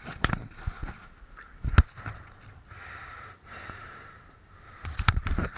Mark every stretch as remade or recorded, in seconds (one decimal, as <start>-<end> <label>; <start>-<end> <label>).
0.0-0.8 remade; 0.8-3.2 recorded; 3.2-5.6 remade